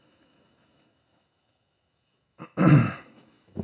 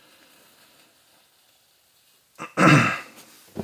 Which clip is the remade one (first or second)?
first